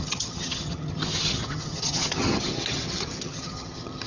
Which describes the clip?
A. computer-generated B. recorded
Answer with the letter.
A